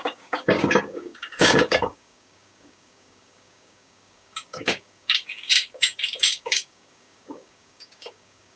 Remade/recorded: remade